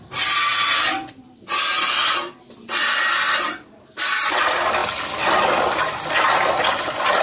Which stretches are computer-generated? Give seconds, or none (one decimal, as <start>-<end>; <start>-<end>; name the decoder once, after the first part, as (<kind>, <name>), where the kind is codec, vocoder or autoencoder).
none